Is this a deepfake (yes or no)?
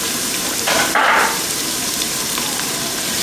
yes